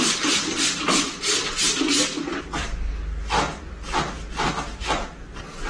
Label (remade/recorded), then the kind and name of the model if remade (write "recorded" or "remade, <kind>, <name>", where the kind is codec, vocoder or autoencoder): recorded